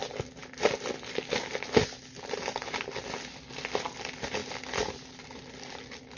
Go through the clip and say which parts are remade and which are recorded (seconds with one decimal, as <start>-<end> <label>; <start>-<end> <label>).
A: 0.0-6.2 recorded